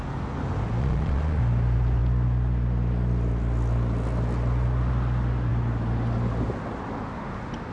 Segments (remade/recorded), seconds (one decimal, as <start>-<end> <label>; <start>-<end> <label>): 0.0-0.8 recorded; 0.8-1.4 remade; 1.4-7.7 recorded